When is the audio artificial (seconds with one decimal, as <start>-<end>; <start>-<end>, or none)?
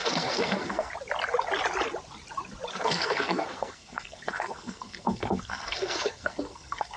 0.0-0.9; 2.7-7.0